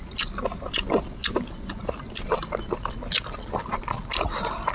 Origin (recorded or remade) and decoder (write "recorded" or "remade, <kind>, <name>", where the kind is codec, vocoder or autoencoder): recorded